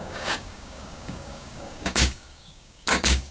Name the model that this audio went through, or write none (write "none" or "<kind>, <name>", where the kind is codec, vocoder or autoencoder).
codec, DAC